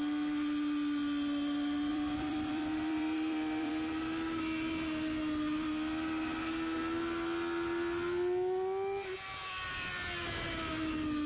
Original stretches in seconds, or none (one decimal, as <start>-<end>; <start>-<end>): 0.0-1.9; 3.7-9.4; 9.9-11.3